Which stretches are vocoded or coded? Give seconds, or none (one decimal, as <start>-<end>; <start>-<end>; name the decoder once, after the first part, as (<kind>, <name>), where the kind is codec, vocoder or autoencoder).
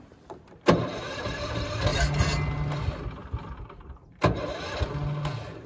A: none